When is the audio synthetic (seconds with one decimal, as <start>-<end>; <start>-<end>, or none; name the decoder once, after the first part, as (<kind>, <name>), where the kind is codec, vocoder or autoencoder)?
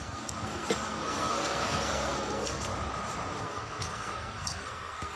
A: 0.0-2.7 (codec, SNAC); 3.4-5.2